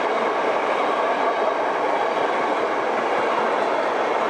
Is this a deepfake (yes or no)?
no